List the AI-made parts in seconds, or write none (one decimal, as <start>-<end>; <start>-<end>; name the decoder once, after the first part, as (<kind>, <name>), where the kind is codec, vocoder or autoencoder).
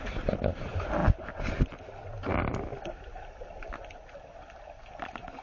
none